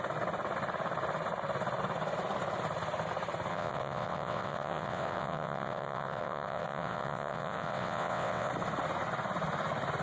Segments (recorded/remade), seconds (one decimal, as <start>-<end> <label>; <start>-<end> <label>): 0.0-3.5 recorded; 3.5-8.5 remade; 8.5-10.0 recorded

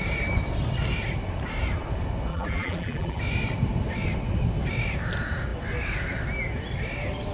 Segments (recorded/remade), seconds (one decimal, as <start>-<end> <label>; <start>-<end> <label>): 0.0-2.3 recorded; 2.3-3.2 remade; 3.2-7.3 recorded

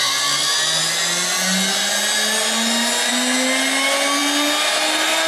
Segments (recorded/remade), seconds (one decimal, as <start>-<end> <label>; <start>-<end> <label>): 0.0-5.3 recorded